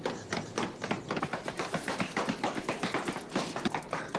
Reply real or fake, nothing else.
real